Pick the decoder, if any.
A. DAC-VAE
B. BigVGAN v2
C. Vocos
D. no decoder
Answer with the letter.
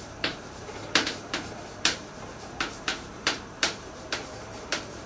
B